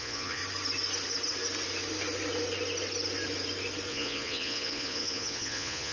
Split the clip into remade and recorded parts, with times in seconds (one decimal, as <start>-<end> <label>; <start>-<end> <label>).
0.0-0.4 remade; 0.4-3.9 recorded; 3.9-5.9 remade